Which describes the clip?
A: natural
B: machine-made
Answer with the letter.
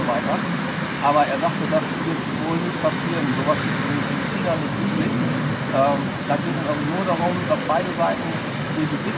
A